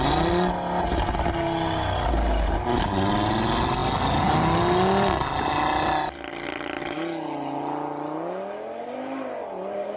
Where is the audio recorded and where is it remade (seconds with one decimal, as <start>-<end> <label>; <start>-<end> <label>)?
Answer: 0.0-10.0 recorded

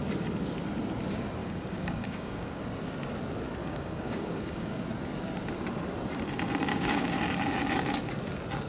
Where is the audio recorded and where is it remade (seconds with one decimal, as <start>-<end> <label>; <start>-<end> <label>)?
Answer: 0.0-1.4 recorded; 1.4-2.6 remade; 2.6-3.6 recorded; 3.6-4.8 remade; 4.8-6.7 recorded; 6.7-7.2 remade; 7.2-8.7 recorded

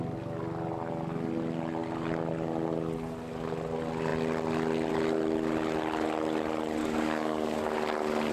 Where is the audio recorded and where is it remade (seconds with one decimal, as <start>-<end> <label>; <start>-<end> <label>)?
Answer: 0.0-6.8 recorded; 6.8-7.6 remade; 7.6-8.3 recorded

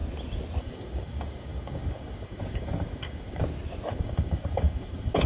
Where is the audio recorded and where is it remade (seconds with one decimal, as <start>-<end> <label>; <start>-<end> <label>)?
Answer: 0.0-0.6 recorded; 0.6-3.4 remade; 3.4-3.9 recorded; 3.9-5.3 remade